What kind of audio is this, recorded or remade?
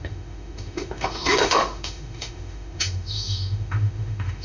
remade